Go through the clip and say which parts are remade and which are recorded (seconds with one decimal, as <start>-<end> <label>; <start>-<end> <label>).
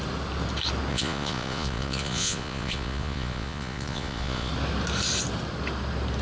0.0-0.9 recorded; 0.9-4.5 remade; 4.5-6.2 recorded